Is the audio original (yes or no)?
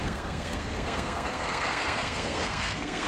no